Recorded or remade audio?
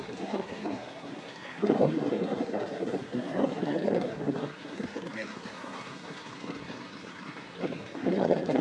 remade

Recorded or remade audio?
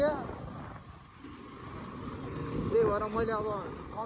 recorded